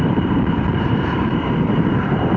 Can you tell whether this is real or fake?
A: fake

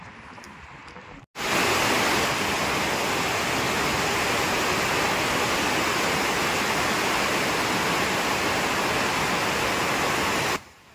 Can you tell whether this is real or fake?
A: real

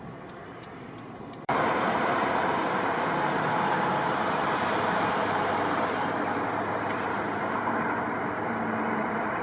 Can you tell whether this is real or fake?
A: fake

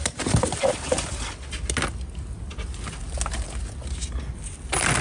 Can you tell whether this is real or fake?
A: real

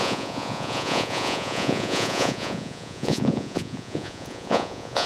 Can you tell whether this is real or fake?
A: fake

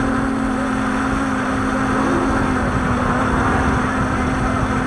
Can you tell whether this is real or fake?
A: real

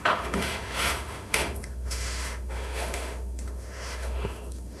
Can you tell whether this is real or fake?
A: fake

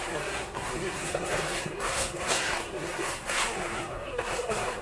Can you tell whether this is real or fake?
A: fake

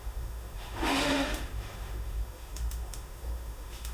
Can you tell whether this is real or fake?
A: fake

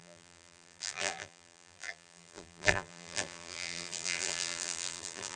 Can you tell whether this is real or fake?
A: fake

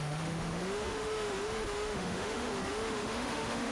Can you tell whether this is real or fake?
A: fake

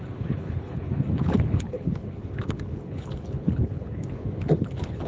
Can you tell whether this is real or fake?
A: fake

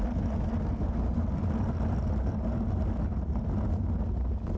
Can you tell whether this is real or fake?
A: real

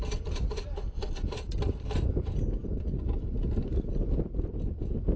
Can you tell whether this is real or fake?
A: real